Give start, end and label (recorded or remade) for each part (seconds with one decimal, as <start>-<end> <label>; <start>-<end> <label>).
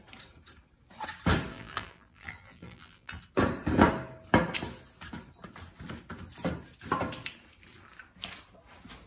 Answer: 0.0-1.5 recorded; 1.5-3.2 remade; 3.2-9.1 recorded